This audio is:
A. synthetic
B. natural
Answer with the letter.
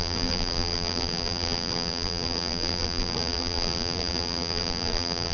A